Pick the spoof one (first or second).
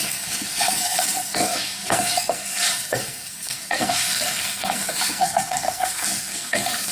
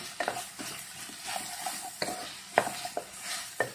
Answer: first